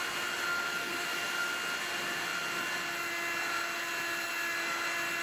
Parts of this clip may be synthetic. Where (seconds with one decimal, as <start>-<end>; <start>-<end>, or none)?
0.8-1.3

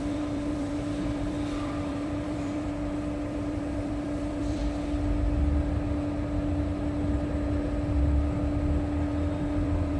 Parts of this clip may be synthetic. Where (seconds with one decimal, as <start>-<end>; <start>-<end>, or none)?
0.0-4.6; 9.4-10.0

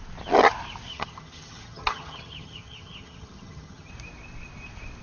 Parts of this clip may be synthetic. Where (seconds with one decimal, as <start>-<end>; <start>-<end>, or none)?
0.9-3.9

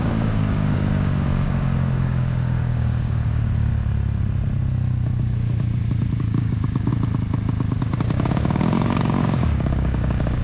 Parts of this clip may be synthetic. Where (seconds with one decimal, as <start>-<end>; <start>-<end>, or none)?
0.0-3.7; 6.2-6.9; 7.8-10.4

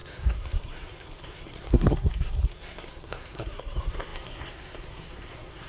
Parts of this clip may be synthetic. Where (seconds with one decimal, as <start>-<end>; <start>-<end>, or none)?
0.0-5.7